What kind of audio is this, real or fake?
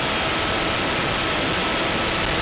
real